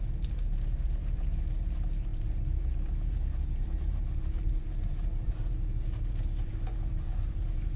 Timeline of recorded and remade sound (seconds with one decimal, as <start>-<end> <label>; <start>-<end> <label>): 0.0-7.8 remade